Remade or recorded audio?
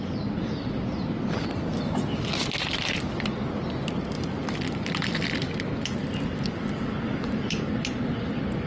recorded